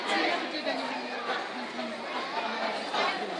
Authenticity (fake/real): real